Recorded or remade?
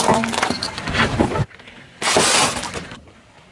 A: recorded